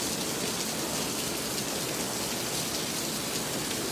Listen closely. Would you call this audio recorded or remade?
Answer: recorded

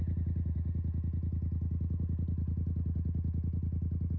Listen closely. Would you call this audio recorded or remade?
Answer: recorded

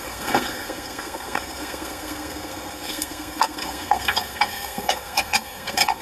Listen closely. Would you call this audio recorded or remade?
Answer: remade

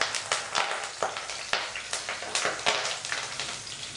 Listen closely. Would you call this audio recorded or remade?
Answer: recorded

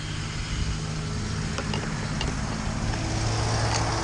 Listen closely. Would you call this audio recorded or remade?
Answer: recorded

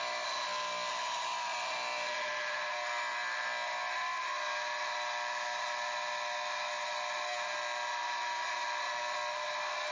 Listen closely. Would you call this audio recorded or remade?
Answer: recorded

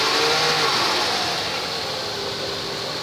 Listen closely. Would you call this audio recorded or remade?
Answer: recorded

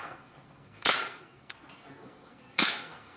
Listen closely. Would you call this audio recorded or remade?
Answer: remade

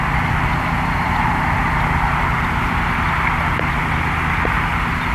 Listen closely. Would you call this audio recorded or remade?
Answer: recorded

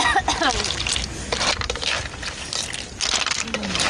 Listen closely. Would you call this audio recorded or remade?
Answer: recorded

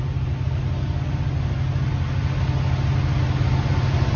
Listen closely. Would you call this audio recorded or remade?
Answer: recorded